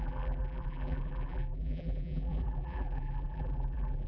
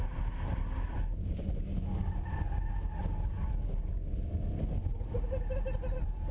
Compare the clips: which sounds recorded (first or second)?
second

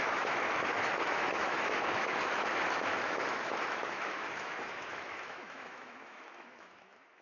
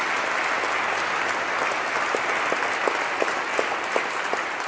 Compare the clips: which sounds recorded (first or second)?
second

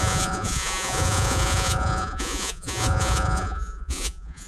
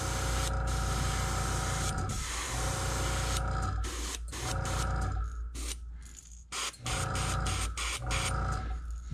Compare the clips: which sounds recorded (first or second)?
second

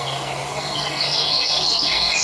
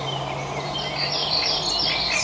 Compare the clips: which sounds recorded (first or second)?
second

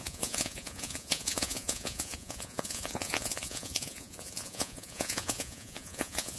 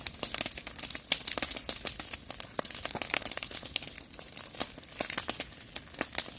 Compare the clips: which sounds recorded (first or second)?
second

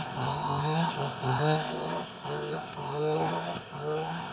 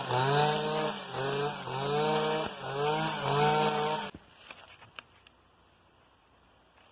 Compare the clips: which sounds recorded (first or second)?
second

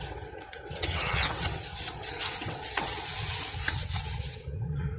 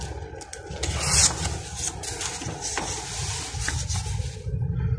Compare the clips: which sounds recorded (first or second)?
second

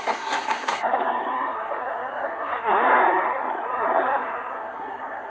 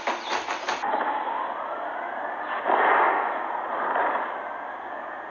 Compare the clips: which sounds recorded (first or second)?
second